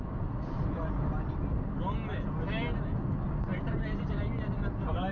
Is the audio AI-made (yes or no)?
no